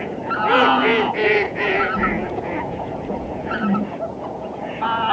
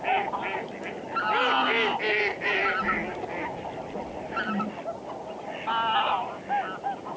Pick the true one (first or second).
second